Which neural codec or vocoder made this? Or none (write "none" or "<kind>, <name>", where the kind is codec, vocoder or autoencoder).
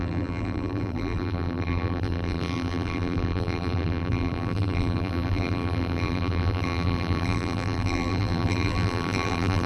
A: vocoder, BigVGAN v2